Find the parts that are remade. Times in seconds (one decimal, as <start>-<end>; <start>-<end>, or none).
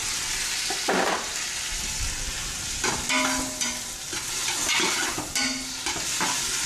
0.0-1.8